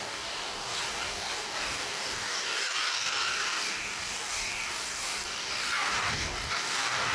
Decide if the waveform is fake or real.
fake